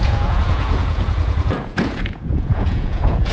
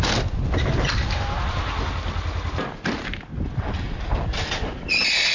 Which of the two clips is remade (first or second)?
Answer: first